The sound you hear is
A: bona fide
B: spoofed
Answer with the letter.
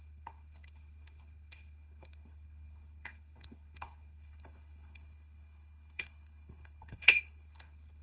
B